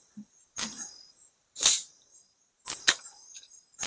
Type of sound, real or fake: fake